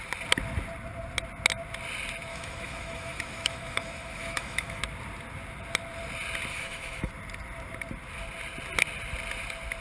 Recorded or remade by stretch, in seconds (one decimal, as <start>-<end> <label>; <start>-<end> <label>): 0.0-2.3 recorded; 2.3-4.8 remade; 4.8-6.5 recorded; 6.5-7.1 remade; 7.1-9.8 recorded